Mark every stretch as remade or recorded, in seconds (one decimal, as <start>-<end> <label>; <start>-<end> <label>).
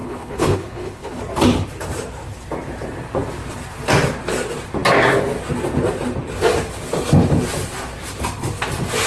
0.0-1.2 remade; 1.2-9.1 recorded